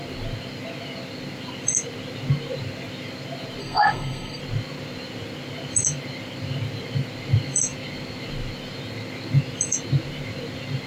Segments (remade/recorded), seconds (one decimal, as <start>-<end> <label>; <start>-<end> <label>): 0.0-3.6 recorded; 3.6-4.4 remade; 4.4-10.9 recorded